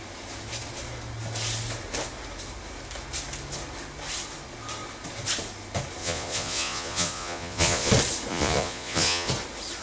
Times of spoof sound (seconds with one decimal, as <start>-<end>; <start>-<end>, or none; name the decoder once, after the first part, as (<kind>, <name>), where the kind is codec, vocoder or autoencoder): 6.0-7.9 (vocoder, Vocos); 8.3-9.3